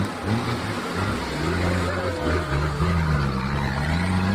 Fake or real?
real